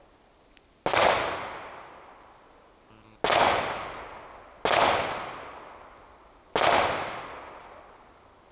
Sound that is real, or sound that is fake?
real